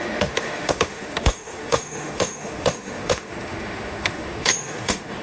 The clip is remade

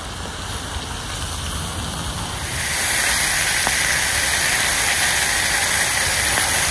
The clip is recorded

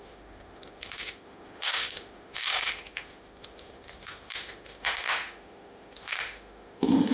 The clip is remade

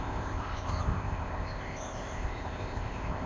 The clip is remade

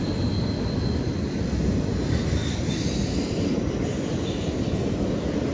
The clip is recorded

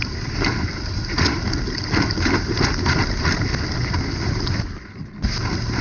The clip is recorded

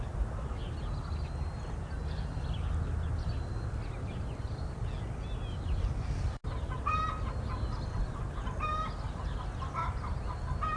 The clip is recorded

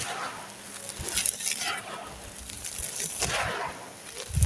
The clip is recorded